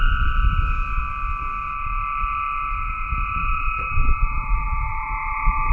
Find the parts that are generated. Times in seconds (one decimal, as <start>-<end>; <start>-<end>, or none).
3.4-5.7